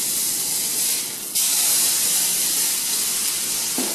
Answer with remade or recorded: recorded